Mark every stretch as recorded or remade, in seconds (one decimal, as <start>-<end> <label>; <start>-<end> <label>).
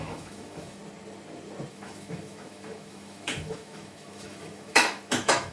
0.0-0.8 remade; 0.8-1.7 recorded; 1.7-5.5 remade